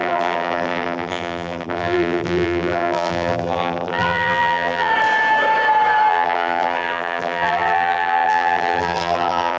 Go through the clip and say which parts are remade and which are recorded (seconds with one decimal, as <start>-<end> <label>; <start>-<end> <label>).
0.0-4.9 remade; 4.9-6.1 recorded; 6.1-9.6 remade